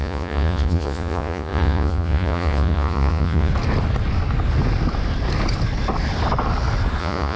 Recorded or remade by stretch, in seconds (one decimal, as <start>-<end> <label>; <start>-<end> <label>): 0.0-3.5 remade; 3.5-7.0 recorded; 7.0-7.4 remade